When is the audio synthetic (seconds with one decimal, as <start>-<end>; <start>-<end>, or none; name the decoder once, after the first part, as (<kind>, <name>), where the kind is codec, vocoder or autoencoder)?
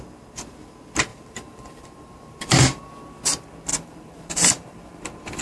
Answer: 1.1-2.8 (vocoder, BigVGAN v2); 3.7-5.0